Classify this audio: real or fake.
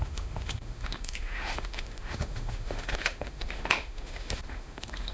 fake